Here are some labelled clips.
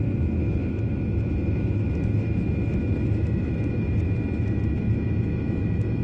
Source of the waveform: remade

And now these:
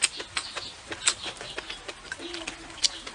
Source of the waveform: recorded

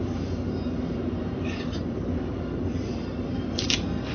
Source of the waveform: recorded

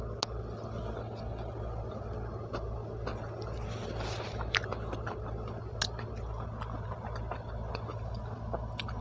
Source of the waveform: recorded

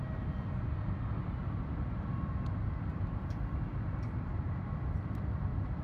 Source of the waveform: recorded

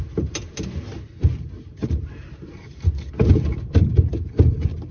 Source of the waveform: recorded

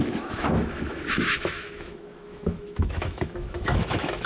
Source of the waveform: remade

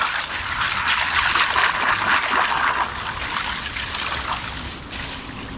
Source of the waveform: recorded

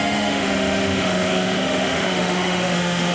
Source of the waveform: remade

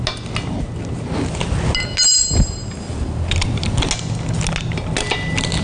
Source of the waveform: recorded